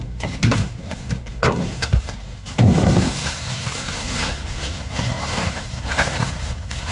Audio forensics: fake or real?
fake